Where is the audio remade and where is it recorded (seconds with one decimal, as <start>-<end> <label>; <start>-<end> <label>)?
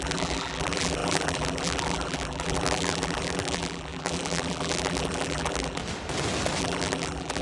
0.0-5.8 remade; 5.8-6.6 recorded; 6.6-7.4 remade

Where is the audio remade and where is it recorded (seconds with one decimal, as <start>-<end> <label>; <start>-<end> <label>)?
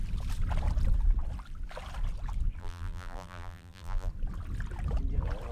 0.0-2.6 recorded; 2.6-4.1 remade; 4.1-5.5 recorded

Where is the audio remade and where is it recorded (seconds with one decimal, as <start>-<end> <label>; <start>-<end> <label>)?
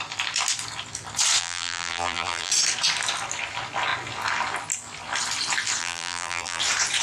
0.0-1.4 recorded; 1.4-2.5 remade; 2.5-5.8 recorded; 5.8-6.6 remade; 6.6-7.0 recorded